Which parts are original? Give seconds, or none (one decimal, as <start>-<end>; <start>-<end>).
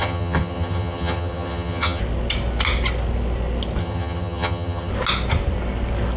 2.0-3.8; 4.9-6.2